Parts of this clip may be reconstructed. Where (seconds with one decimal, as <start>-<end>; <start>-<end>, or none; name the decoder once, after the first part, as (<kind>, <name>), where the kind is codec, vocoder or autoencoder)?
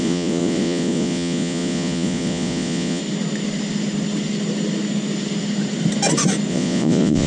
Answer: 0.0-3.0 (vocoder, Vocos); 6.5-7.3